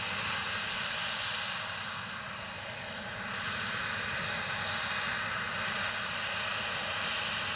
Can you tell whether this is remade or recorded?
recorded